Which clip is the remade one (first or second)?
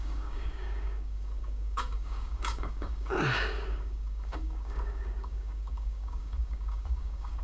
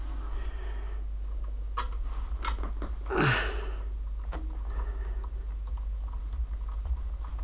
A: first